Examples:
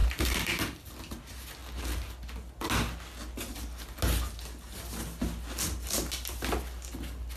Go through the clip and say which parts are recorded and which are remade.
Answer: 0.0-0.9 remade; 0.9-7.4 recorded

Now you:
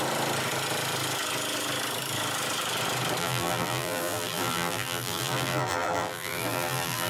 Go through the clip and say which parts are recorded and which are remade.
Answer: 0.0-3.2 recorded; 3.2-7.1 remade

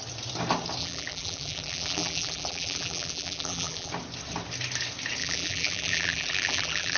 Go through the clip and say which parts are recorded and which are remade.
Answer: 0.0-0.8 recorded; 0.8-3.9 remade; 3.9-5.2 recorded; 5.2-7.0 remade

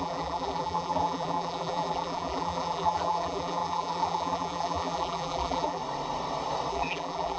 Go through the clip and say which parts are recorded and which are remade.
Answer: 0.0-5.8 remade; 5.8-6.7 recorded; 6.7-7.4 remade

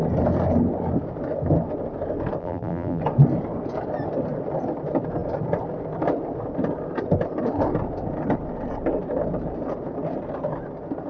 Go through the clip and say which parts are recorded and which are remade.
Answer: 0.0-2.4 recorded; 2.4-3.0 remade; 3.0-11.1 recorded

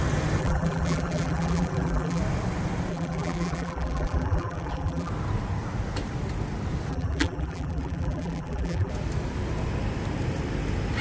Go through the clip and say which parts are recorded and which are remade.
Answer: 0.0-0.4 recorded; 0.4-2.2 remade; 2.2-2.9 recorded; 2.9-5.1 remade; 5.1-6.9 recorded; 6.9-8.9 remade; 8.9-11.0 recorded

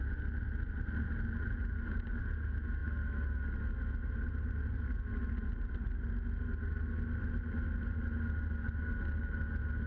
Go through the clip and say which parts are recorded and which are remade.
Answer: 0.0-1.6 recorded; 1.6-2.2 remade; 2.2-9.9 recorded

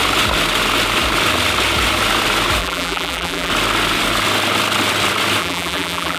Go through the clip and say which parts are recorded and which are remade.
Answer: 0.0-2.6 recorded; 2.6-3.5 remade; 3.5-5.4 recorded; 5.4-6.2 remade